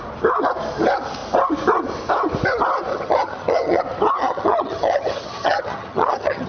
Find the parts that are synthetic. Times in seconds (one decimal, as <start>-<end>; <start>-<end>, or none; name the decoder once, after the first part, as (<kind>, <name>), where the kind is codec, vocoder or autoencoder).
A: 2.9-3.8 (vocoder, HiFi-GAN); 4.2-6.5